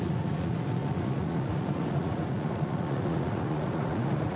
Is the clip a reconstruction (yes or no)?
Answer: yes